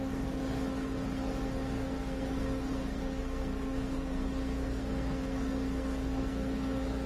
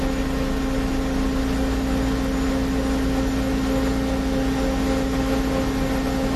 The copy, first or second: first